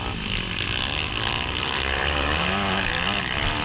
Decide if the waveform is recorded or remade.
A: recorded